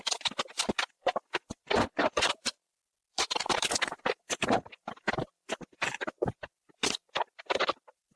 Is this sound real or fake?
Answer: real